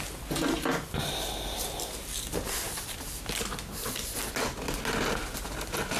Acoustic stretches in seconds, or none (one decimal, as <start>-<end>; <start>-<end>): 0.0-6.0